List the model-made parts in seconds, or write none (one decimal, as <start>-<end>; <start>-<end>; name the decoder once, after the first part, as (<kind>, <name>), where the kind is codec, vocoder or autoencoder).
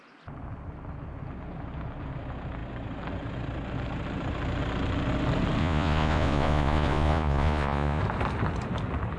5.6-8.0 (vocoder, Vocos)